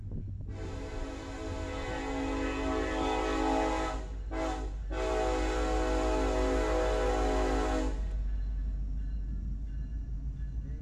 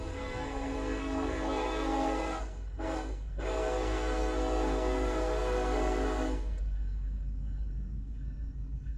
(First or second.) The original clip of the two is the first